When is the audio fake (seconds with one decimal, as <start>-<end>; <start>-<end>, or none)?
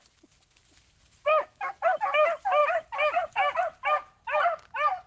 1.1-1.7